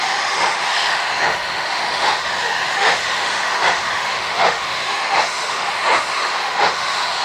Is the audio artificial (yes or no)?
yes